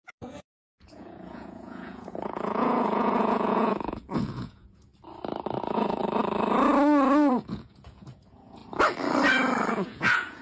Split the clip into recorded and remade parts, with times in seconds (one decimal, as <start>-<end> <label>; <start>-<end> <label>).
0.0-4.9 remade; 4.9-5.6 recorded; 5.6-6.0 remade; 6.0-7.3 recorded; 7.3-8.6 remade; 8.6-9.7 recorded; 9.7-10.4 remade